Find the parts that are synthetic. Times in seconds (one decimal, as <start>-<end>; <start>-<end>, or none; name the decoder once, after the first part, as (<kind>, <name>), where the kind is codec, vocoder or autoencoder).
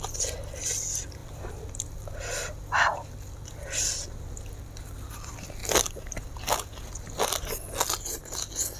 1.2-1.7 (vocoder, BigVGAN v2); 5.6-8.2